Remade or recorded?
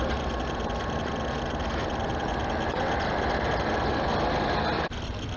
recorded